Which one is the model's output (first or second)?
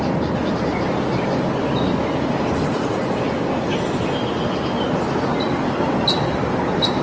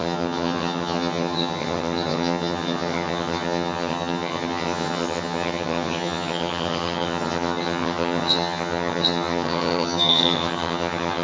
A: second